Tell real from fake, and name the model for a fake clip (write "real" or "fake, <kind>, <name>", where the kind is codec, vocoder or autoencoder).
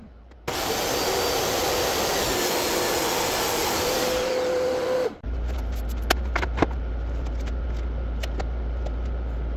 real